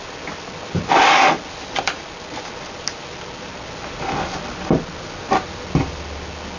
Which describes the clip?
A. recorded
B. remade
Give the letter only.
A